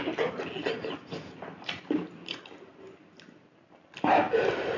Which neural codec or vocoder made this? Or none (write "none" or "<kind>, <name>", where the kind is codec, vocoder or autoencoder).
none